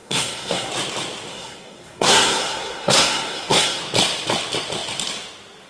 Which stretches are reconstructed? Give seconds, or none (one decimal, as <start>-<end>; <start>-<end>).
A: 0.0-0.7; 1.3-3.8